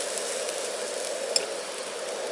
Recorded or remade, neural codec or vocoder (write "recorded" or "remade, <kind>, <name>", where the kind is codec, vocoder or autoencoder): recorded